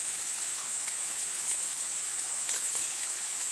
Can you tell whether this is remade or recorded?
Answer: remade